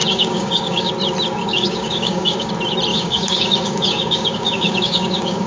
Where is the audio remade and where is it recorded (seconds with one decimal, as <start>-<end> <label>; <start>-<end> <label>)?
0.0-0.9 remade; 0.9-1.4 recorded; 1.4-2.5 remade; 2.5-2.9 recorded; 2.9-5.5 remade